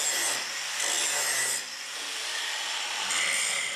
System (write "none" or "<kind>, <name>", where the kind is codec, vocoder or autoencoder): none